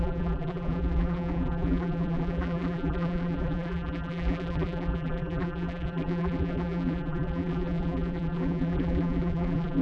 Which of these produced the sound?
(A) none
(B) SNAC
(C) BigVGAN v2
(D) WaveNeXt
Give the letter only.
C